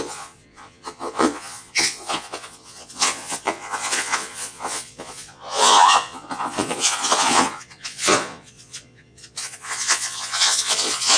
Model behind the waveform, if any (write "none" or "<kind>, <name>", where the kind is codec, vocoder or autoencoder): vocoder, Vocos